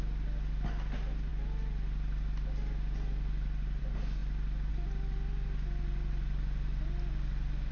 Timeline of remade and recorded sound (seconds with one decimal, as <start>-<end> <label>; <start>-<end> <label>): 0.0-7.7 recorded